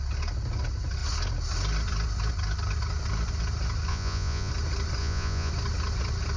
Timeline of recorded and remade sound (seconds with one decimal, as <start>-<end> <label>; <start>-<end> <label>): 0.0-3.9 recorded; 3.9-4.5 remade; 4.5-5.0 recorded; 5.0-5.5 remade; 5.5-6.4 recorded

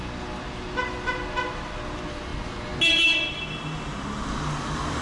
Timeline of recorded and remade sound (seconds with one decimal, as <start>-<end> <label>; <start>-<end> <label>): 0.0-5.0 recorded

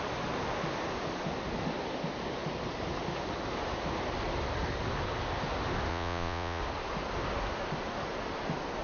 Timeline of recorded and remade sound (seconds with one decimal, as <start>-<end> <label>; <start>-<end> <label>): 0.0-5.9 recorded; 5.9-6.6 remade; 6.6-8.8 recorded

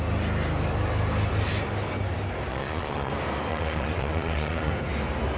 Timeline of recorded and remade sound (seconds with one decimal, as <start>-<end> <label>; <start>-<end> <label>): 0.0-2.5 recorded; 2.5-3.1 remade; 3.1-3.5 recorded; 3.5-4.7 remade; 4.7-5.4 recorded

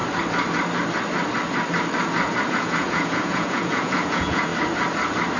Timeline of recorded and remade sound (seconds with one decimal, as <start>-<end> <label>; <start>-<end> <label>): 0.0-2.5 recorded; 2.5-4.5 remade; 4.5-5.4 recorded

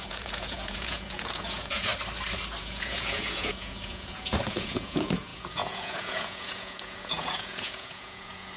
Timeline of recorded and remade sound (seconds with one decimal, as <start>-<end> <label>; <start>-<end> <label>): 0.0-1.9 remade; 1.9-2.6 recorded; 2.6-8.6 remade

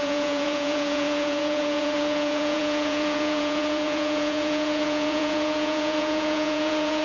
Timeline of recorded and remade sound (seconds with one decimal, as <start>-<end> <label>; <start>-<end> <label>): 0.0-7.0 remade